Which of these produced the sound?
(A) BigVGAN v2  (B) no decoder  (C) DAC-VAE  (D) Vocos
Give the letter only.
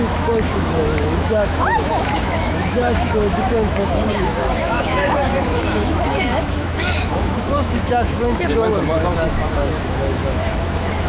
C